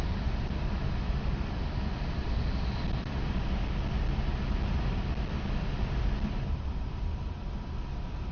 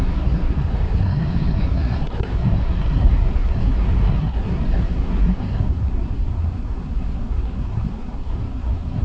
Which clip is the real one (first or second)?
first